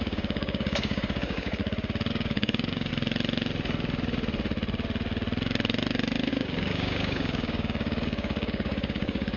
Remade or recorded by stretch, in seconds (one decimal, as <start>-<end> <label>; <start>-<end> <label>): 0.0-1.6 remade; 1.6-2.1 recorded; 2.1-2.9 remade; 2.9-6.3 recorded; 6.3-9.4 remade